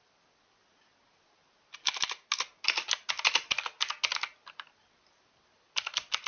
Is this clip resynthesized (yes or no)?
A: no